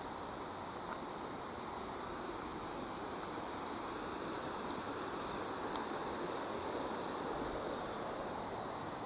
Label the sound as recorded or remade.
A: recorded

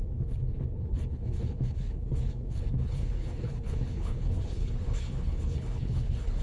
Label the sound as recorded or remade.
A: remade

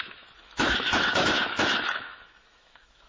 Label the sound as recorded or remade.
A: remade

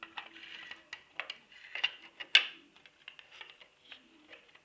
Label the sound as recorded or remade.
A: recorded